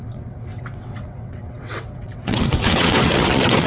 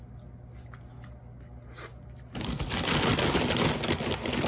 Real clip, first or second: second